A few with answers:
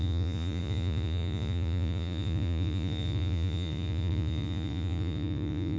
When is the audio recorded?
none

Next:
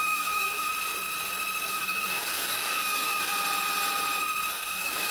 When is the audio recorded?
0.7-1.7; 3.3-4.5

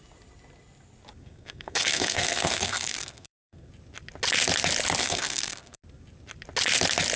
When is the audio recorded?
0.0-1.2; 3.7-5.0; 5.8-7.2

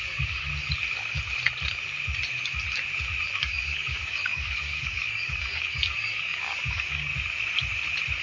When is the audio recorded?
0.5-3.4; 7.1-8.2

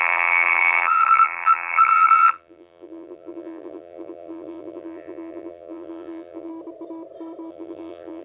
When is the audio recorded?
6.5-7.5

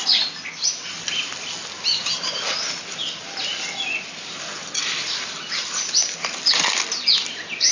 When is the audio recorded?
0.0-7.7

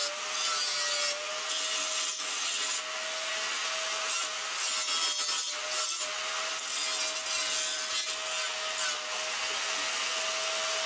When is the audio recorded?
0.0-10.9

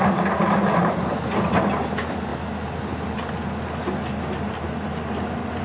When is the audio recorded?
0.0-5.6